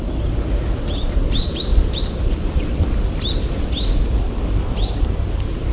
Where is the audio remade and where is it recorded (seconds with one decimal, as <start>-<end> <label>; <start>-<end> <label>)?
0.0-1.7 recorded; 1.7-5.1 remade; 5.1-5.7 recorded